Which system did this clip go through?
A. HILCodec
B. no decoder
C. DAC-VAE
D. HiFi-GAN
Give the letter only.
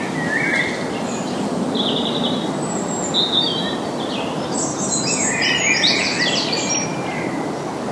B